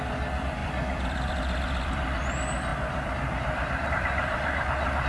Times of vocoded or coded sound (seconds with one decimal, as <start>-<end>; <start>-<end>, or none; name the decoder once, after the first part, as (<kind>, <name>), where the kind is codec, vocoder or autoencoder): 0.0-2.7 (vocoder, BigVGAN v2); 3.9-5.1